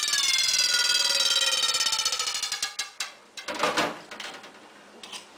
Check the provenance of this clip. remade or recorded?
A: recorded